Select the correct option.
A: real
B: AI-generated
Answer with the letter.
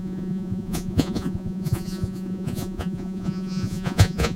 B